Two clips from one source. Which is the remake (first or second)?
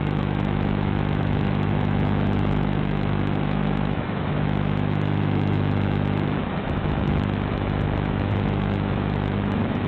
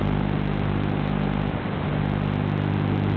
first